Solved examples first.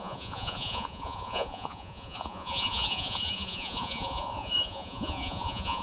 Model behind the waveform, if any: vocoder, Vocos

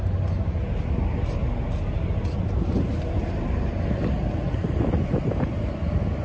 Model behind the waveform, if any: none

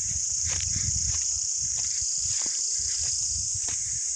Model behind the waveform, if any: vocoder, BigVGAN v2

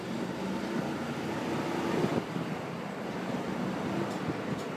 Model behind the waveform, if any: none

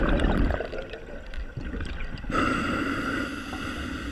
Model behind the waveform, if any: none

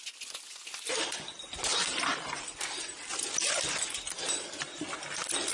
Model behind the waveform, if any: none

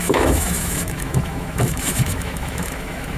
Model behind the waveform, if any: autoencoder, DAC-VAE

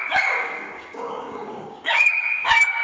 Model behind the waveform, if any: codec, DAC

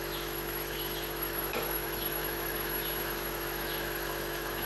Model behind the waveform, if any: autoencoder, DAC-VAE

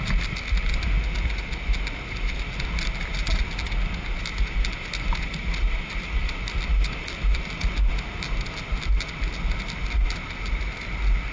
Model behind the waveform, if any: none